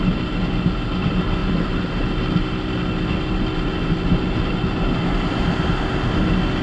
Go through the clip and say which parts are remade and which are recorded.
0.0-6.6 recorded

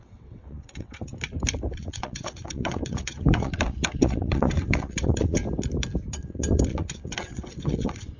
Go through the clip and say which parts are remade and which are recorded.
0.0-1.1 remade; 1.1-1.7 recorded; 1.7-5.4 remade; 5.4-6.1 recorded; 6.1-8.2 remade